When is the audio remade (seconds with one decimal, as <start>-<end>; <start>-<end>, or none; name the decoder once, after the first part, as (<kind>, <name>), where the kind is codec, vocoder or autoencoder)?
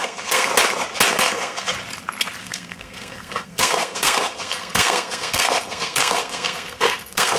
0.0-0.5 (codec, SNAC); 1.1-1.7; 2.4-7.4